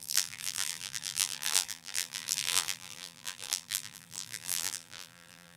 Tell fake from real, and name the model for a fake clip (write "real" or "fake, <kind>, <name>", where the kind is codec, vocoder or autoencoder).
fake, vocoder, BigVGAN v2